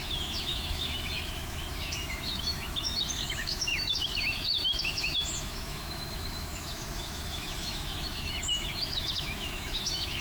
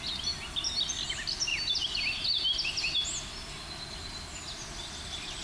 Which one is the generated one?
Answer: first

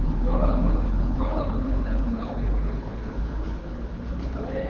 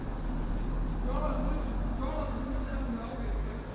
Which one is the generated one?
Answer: first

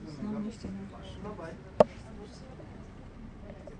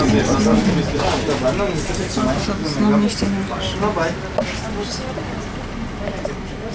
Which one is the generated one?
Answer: first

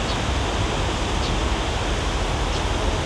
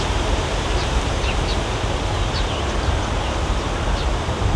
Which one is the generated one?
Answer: second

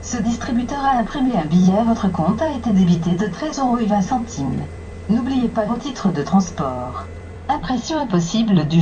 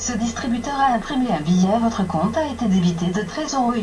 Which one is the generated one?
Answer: first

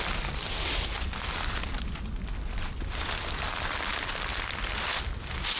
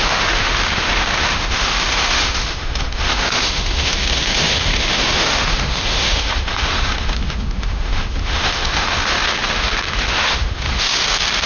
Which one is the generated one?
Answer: second